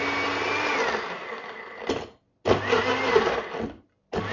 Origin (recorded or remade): recorded